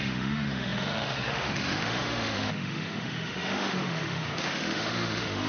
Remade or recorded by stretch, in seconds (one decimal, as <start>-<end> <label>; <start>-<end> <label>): 0.0-5.5 remade